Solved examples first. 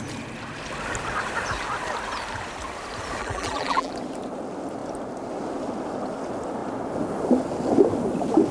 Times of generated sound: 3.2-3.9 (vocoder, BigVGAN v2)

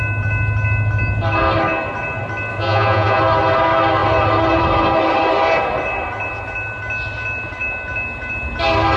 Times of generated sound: 2.5-3.2 (vocoder, Vocos)

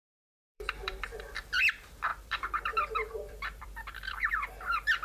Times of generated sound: 0.0-1.6 (vocoder, BigVGAN v2); 2.1-4.3

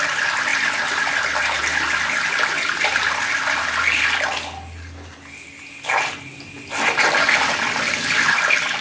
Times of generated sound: none